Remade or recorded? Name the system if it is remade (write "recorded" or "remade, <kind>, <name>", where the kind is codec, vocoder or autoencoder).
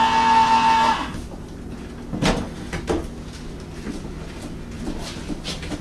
recorded